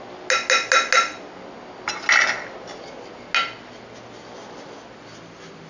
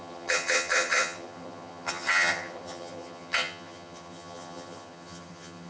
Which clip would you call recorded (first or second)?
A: first